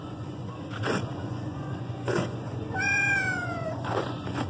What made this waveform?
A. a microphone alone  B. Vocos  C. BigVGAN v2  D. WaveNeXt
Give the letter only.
B